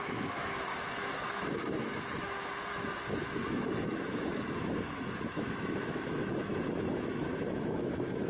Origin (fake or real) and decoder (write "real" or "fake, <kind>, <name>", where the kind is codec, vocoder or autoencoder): fake, autoencoder, DAC-VAE